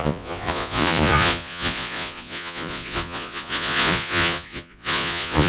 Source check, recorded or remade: remade